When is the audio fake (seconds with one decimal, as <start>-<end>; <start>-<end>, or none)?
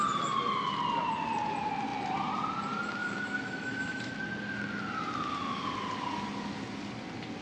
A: 3.0-4.1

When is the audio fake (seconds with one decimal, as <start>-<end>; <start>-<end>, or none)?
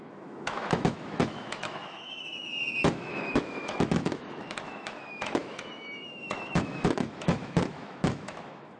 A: 0.0-8.8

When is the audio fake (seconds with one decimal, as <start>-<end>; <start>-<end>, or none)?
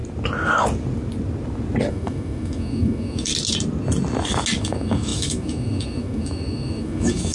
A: 1.9-3.3; 4.6-7.3